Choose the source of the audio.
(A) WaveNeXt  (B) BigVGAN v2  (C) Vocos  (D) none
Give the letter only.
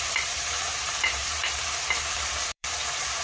B